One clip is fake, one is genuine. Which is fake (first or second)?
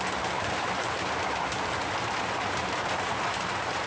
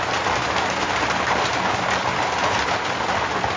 first